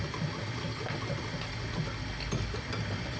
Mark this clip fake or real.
real